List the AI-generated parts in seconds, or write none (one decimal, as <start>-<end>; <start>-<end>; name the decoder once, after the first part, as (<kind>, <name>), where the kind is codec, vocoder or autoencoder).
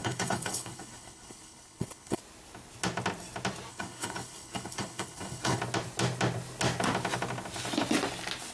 0.0-2.2 (codec, HILCodec); 3.7-5.6